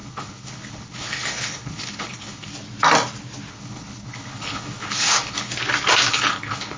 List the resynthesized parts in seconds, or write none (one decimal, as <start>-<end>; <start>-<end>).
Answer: 0.0-2.5; 3.5-5.5; 6.1-6.8